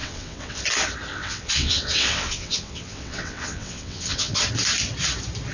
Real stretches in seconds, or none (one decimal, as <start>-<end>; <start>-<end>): 0.6-1.1; 4.4-5.5